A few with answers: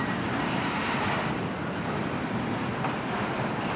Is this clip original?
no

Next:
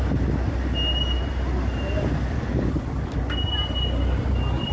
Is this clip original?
yes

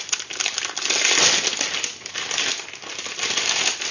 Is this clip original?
yes